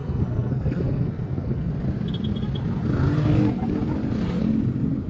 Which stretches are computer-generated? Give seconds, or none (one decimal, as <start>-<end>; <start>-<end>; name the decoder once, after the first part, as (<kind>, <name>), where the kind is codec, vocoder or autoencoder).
0.0-1.7 (codec, SNAC)